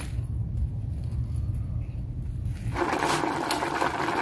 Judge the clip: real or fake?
real